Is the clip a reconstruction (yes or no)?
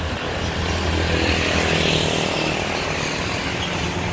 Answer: no